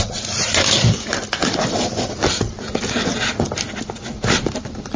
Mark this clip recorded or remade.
remade